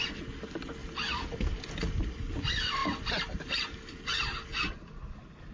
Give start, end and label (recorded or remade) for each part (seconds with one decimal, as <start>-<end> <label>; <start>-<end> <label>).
0.0-5.5 recorded